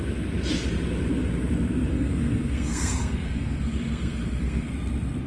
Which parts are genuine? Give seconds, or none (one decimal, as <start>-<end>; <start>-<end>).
0.0-1.9; 4.7-5.3